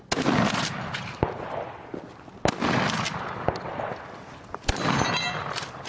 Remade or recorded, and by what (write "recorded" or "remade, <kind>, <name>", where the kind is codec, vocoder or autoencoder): recorded